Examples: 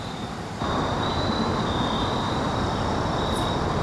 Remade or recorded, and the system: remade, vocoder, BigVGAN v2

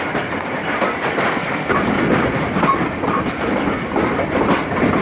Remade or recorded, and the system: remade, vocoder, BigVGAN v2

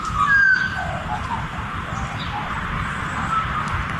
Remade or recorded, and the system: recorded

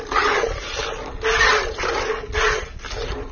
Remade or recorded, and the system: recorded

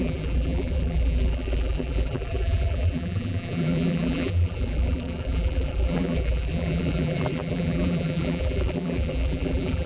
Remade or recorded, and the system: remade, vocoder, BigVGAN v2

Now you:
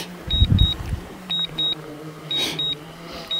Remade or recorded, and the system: remade, vocoder, BigVGAN v2